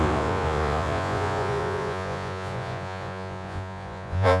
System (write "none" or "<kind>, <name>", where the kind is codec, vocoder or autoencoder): vocoder, Vocos